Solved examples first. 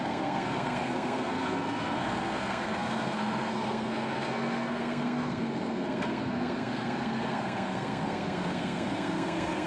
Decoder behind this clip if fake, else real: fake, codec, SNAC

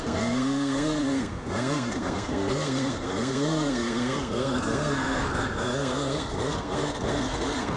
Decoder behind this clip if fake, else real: fake, codec, SNAC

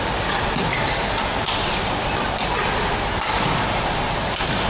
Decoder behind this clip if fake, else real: real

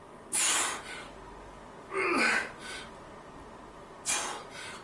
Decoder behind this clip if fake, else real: real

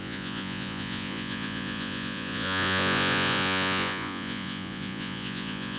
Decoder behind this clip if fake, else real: fake, vocoder, Vocos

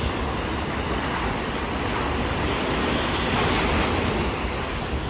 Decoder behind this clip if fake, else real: real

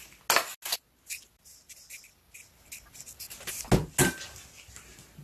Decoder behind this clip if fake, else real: real